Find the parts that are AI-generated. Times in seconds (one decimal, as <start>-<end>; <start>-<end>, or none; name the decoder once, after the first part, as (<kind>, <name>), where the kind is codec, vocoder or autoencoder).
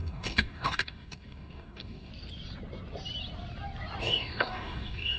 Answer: 0.0-2.1 (codec, DAC); 4.0-5.2